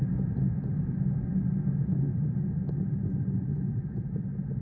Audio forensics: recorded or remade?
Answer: recorded